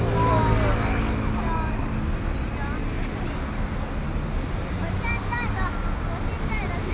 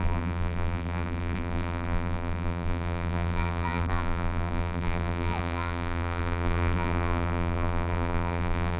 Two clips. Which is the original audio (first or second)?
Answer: first